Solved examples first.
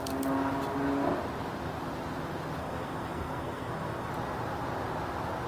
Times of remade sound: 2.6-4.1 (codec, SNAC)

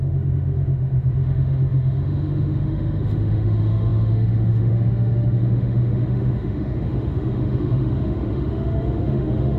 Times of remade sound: 0.0-9.6 (autoencoder, DAC-VAE)

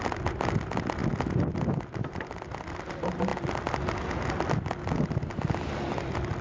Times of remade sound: none

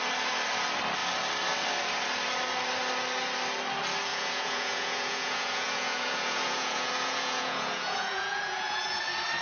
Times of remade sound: 4.1-9.0 (vocoder, Vocos)

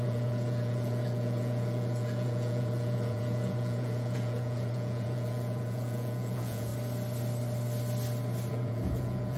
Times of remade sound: 0.0-6.7 (vocoder, Vocos); 8.5-9.4